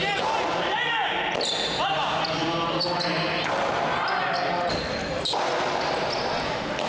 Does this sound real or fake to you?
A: real